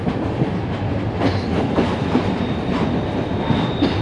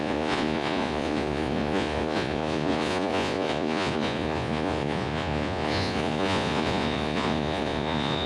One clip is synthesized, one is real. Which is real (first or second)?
first